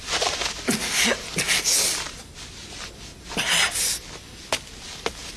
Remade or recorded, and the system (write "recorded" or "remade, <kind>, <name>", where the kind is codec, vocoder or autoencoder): recorded